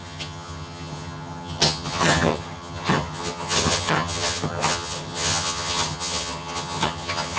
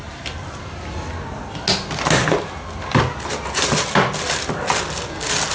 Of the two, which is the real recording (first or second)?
second